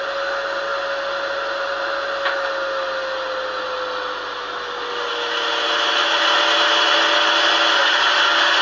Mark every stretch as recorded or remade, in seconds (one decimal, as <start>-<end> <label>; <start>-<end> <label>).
0.0-8.6 recorded